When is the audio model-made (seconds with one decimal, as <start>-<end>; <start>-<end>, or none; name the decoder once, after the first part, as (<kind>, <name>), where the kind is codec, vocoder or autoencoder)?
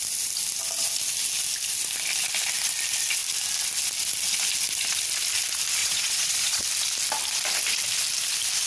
5.8-6.6 (vocoder, Vocos)